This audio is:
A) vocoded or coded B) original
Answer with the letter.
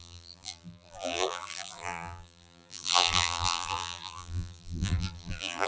A